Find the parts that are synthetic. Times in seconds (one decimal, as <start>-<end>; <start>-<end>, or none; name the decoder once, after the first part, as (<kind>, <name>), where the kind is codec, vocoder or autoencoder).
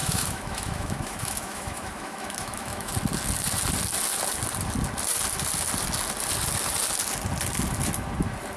0.0-2.9 (autoencoder, DAC-VAE)